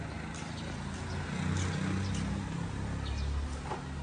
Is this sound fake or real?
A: real